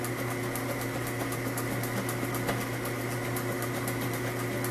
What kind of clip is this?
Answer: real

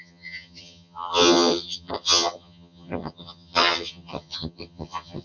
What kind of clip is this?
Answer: fake